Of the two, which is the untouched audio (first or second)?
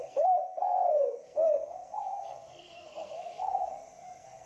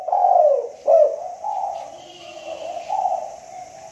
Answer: second